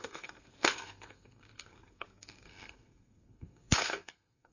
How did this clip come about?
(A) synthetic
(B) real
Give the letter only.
A